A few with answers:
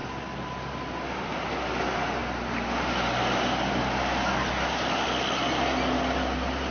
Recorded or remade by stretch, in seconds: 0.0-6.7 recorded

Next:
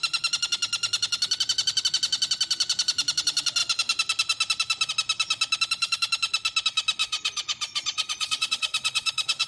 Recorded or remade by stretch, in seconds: 0.0-7.0 recorded; 7.0-9.5 remade